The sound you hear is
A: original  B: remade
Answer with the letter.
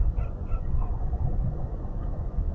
B